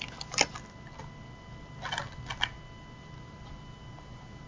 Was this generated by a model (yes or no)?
no